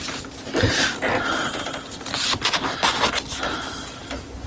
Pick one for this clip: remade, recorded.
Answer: recorded